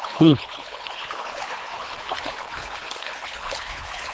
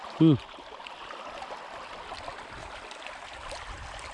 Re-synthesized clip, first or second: first